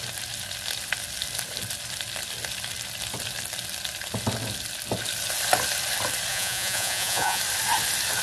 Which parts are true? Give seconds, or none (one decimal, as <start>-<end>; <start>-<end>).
0.0-6.3; 7.4-8.2